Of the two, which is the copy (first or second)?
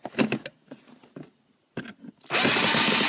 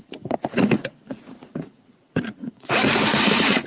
second